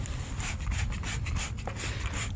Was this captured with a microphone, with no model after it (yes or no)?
yes